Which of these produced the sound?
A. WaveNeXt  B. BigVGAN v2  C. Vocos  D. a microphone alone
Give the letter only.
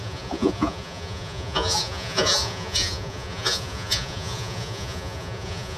C